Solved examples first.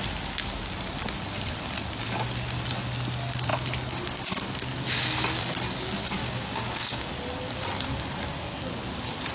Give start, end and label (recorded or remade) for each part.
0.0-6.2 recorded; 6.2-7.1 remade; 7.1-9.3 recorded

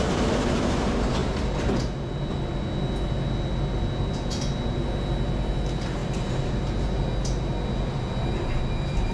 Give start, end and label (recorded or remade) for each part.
0.0-9.1 recorded

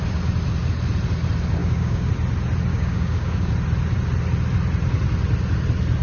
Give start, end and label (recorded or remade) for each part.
0.0-1.6 recorded; 1.6-2.1 remade; 2.1-2.7 recorded; 2.7-3.5 remade; 3.5-6.0 recorded

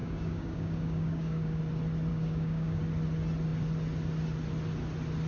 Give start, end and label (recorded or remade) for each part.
0.0-1.6 remade; 1.6-2.1 recorded; 2.1-2.8 remade; 2.8-5.3 recorded

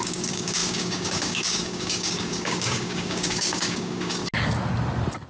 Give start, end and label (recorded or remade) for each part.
0.0-4.2 remade; 4.2-5.3 recorded